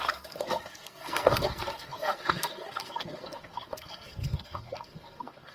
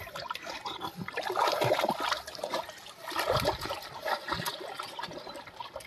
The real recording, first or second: second